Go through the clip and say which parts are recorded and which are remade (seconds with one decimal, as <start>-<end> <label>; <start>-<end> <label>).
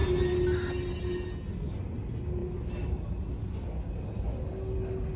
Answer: 0.0-5.2 recorded